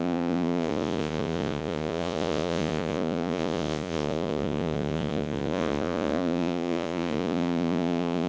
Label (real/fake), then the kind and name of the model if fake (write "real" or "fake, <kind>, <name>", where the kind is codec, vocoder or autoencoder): fake, vocoder, Vocos